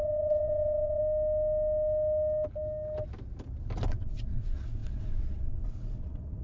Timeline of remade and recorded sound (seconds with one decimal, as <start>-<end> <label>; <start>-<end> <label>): 0.0-1.0 remade; 1.0-3.9 recorded; 3.9-6.4 remade